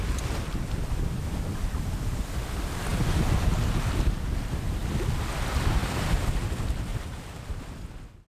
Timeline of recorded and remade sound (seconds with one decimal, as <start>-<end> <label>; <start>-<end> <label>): 0.0-5.8 recorded; 5.8-6.3 remade; 6.3-6.9 recorded; 6.9-7.6 remade; 7.6-8.3 recorded